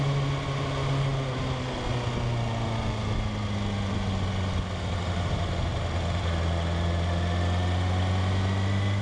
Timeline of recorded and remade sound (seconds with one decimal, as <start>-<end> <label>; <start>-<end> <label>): 0.0-9.0 recorded